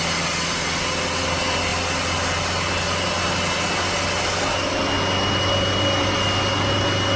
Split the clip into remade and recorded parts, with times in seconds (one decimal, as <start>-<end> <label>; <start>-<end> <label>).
0.0-7.2 recorded